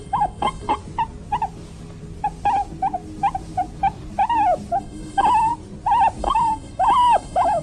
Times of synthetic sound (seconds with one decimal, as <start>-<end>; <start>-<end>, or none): 0.0-0.8; 4.8-5.5; 6.2-7.6